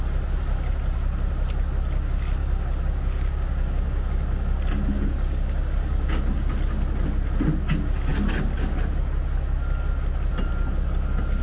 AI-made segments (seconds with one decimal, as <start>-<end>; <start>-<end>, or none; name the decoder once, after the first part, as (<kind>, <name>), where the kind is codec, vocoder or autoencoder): 2.4-6.2 (codec, DAC)